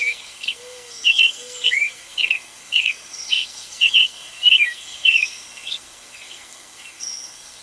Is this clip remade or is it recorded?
remade